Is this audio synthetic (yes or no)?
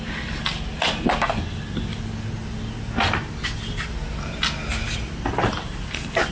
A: no